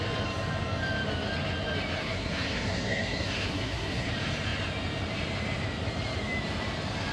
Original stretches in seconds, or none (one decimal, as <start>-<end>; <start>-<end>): 0.0-2.0; 4.1-7.1